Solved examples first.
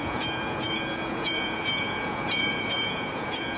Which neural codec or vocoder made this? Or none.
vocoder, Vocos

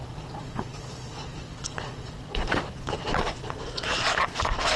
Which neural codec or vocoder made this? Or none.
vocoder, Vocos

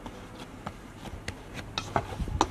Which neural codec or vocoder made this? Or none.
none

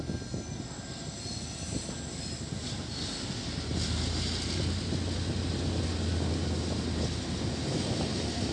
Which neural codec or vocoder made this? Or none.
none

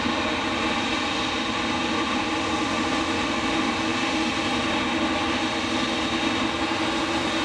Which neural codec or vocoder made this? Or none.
none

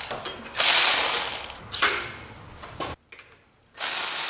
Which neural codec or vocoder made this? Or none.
none